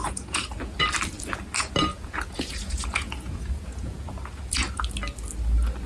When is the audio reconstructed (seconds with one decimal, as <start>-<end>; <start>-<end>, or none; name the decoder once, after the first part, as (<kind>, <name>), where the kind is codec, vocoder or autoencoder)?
0.0-0.5 (vocoder, Vocos); 1.9-4.8